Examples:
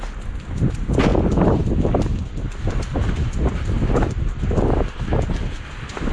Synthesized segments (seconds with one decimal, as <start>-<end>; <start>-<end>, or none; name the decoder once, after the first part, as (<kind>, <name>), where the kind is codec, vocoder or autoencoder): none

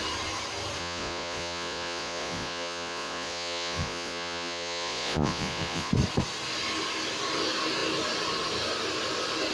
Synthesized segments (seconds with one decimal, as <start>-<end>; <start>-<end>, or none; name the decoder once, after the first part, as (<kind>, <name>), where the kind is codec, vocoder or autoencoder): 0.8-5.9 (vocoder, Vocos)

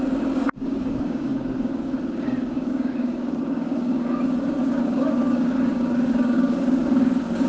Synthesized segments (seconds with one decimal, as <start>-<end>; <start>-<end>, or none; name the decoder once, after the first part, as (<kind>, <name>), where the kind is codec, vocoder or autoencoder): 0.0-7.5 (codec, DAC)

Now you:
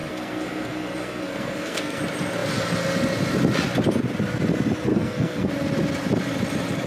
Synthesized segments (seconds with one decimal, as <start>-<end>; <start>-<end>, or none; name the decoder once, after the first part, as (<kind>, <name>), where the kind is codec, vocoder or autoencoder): 0.0-2.0 (codec, SNAC); 4.9-5.5

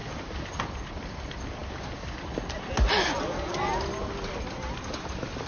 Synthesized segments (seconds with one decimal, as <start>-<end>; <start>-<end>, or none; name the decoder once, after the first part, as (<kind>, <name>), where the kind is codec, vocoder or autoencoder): none